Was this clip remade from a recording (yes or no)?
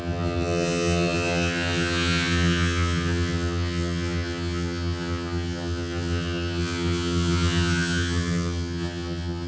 yes